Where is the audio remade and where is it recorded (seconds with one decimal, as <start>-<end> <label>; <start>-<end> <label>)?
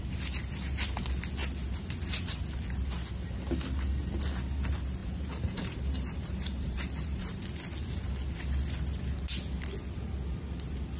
0.0-5.0 recorded; 5.0-7.4 remade; 7.4-11.0 recorded